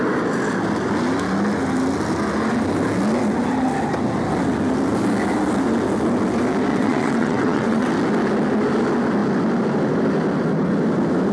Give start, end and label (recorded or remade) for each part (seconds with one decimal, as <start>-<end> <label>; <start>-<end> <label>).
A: 0.0-6.7 recorded; 6.7-7.9 remade; 7.9-11.3 recorded